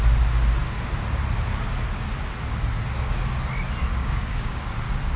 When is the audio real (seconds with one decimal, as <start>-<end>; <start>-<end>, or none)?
0.0-3.8; 4.6-5.2